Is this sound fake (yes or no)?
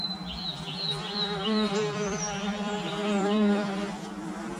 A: yes